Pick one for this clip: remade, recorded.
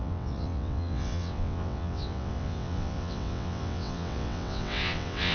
remade